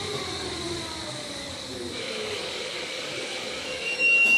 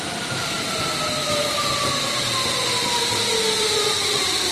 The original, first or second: second